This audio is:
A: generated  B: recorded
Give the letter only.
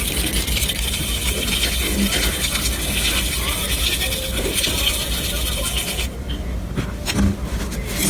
B